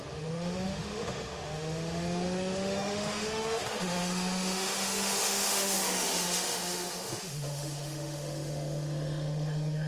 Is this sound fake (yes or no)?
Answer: yes